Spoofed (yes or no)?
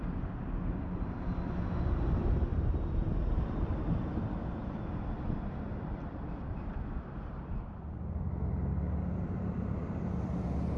yes